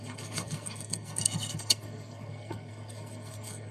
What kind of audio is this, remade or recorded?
remade